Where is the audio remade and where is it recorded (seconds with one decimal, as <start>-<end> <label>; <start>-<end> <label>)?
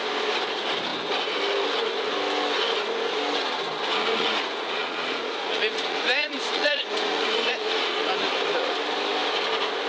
0.0-3.9 recorded; 3.9-8.3 remade; 8.3-9.9 recorded